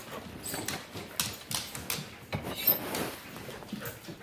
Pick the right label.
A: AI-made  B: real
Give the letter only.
B